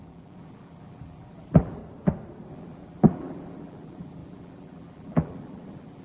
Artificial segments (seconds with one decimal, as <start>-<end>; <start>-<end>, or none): 0.0-1.8; 2.5-6.0